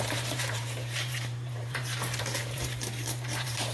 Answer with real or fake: fake